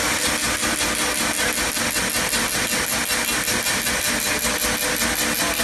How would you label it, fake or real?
real